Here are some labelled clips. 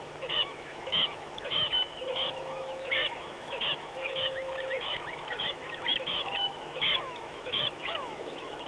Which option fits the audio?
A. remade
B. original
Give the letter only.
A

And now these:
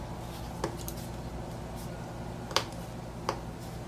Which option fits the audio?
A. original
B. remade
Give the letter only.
A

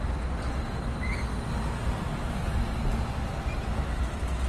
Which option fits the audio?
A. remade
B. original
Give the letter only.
B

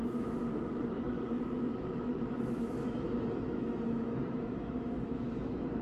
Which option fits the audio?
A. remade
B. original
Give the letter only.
A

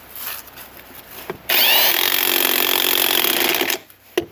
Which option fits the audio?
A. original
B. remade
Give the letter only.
A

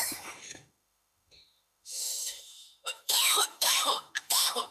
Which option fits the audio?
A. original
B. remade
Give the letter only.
B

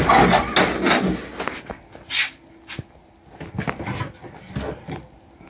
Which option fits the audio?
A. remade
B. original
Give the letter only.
B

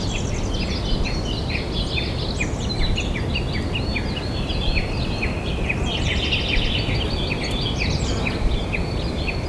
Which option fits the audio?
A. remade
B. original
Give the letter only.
B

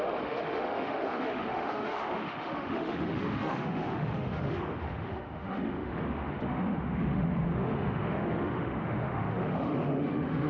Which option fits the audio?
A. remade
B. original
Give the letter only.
A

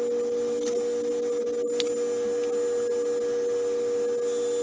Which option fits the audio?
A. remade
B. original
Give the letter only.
B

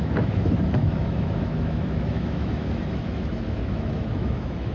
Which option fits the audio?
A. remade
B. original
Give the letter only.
A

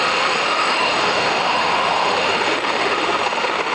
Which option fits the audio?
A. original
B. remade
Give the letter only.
B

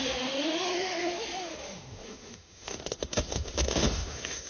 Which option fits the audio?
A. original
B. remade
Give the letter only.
B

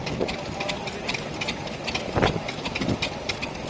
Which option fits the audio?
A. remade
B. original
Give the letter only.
B